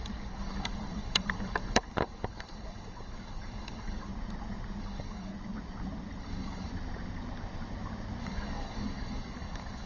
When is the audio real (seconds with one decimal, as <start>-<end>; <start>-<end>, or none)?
4.1-4.8; 5.3-6.2; 6.7-8.2